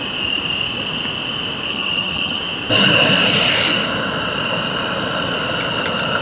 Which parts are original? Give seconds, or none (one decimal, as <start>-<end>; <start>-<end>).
0.0-1.7; 2.4-6.2